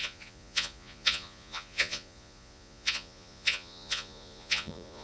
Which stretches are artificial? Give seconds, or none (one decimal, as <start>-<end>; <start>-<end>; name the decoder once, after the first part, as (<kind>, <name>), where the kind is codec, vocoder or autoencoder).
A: 0.0-5.0 (vocoder, Vocos)